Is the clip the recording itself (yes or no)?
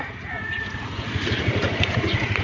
no